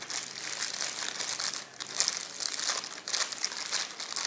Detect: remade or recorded recorded